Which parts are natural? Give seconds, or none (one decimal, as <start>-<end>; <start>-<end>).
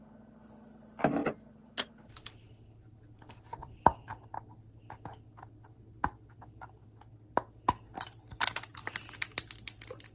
0.0-10.1